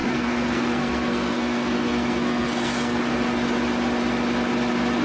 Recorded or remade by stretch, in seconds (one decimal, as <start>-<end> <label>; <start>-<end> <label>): 0.0-3.0 remade; 3.0-5.0 recorded